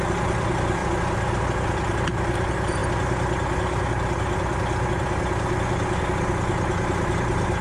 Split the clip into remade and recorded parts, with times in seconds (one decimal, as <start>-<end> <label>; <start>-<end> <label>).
0.0-7.6 recorded